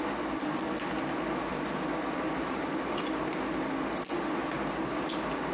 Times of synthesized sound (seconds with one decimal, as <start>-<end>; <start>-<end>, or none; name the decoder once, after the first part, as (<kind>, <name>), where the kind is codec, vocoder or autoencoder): none